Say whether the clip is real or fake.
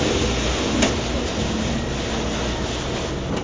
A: real